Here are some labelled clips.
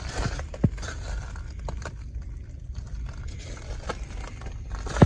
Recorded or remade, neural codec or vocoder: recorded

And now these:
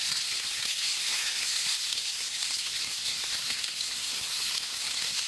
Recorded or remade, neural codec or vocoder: remade, codec, SNAC